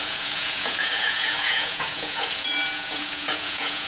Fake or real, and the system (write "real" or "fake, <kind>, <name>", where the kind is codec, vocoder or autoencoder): fake, vocoder, Vocos